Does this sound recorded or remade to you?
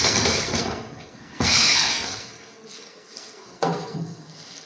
remade